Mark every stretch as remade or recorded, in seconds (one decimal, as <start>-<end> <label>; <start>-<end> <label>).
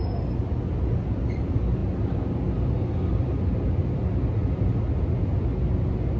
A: 0.0-6.2 recorded